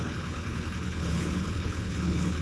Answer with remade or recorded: remade